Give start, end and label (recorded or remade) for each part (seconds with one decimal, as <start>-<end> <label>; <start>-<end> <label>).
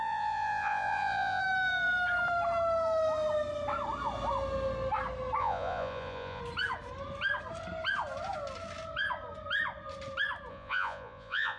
0.0-1.4 remade; 1.4-5.4 recorded; 5.4-6.4 remade; 6.4-10.5 recorded; 10.5-11.6 remade